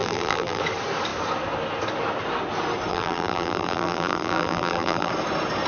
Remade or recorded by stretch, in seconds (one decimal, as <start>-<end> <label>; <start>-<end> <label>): 0.0-0.6 remade; 0.6-2.9 recorded; 2.9-5.1 remade; 5.1-5.7 recorded